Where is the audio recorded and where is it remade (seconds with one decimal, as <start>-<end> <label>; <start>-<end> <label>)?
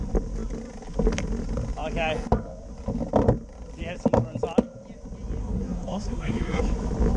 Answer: 0.0-5.4 recorded; 5.4-6.6 remade; 6.6-7.2 recorded